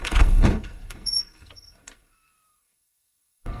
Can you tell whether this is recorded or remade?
remade